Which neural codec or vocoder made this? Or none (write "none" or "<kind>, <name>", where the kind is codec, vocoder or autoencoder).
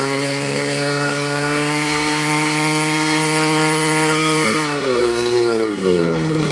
codec, SNAC